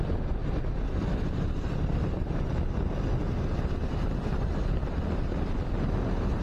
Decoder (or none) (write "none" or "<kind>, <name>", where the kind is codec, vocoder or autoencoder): none